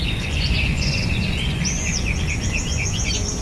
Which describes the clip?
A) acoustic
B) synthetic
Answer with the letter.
B